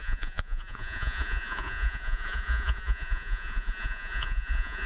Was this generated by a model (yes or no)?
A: yes